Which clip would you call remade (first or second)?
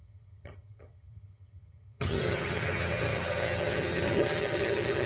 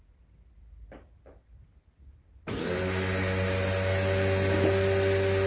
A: first